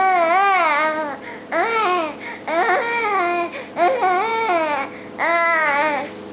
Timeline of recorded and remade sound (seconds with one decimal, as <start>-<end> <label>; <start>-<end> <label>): 0.0-6.3 recorded